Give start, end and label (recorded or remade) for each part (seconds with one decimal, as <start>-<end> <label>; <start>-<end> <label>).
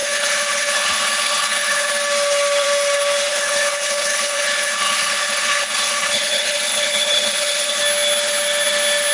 0.0-1.9 remade; 1.9-3.3 recorded; 3.3-7.8 remade; 7.8-9.1 recorded